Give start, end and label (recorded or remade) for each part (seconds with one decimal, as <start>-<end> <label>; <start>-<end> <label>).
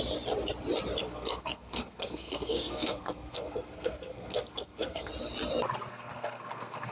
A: 0.0-1.0 recorded; 1.0-5.1 remade; 5.1-5.9 recorded; 5.9-6.9 remade